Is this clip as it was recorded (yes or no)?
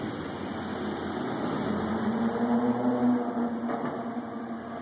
yes